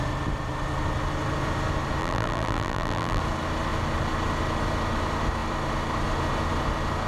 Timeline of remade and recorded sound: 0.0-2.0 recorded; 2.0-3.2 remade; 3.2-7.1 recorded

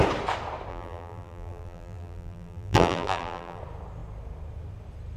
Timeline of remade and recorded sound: 0.0-0.7 recorded; 0.7-3.6 remade; 3.6-5.2 recorded